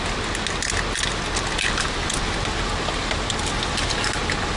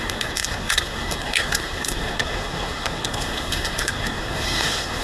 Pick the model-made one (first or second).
second